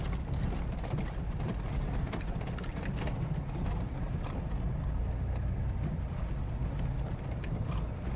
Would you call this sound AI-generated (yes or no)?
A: no